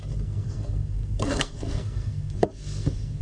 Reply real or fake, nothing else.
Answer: fake